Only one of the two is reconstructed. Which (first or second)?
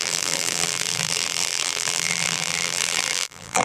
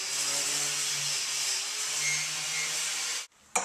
first